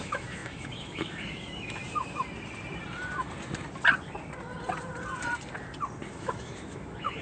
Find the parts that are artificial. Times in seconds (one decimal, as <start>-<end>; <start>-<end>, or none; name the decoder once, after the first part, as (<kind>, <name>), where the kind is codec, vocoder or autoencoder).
0.0-1.8 (autoencoder, DAC-VAE); 6.1-7.2